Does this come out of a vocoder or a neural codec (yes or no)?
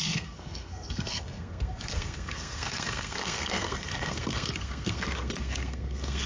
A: yes